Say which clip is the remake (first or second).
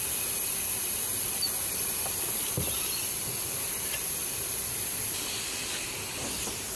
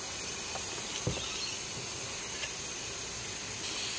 first